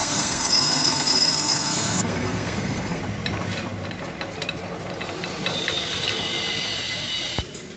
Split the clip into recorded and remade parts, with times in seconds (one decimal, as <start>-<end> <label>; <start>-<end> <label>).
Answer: 0.0-3.0 remade; 3.0-7.8 recorded